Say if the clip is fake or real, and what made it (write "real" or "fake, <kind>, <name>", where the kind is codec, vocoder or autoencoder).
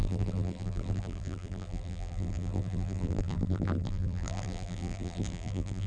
fake, vocoder, BigVGAN v2